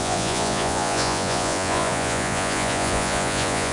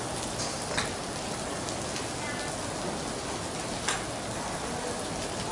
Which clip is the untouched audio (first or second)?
second